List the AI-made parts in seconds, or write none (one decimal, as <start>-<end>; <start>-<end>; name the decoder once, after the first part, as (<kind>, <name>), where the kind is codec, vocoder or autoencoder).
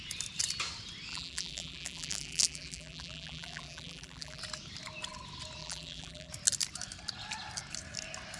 1.1-4.4 (vocoder, BigVGAN v2); 5.6-6.3